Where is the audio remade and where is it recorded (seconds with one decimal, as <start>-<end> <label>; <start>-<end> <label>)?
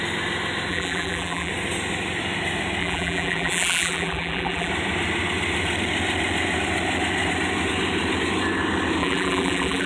0.0-0.7 recorded; 0.7-1.5 remade; 1.5-2.8 recorded; 2.8-4.7 remade; 4.7-9.0 recorded; 9.0-9.9 remade